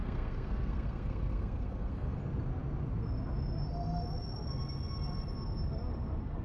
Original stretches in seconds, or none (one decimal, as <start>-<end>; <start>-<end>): 2.2-6.4